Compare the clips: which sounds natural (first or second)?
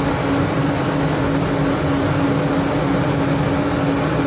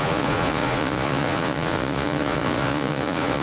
first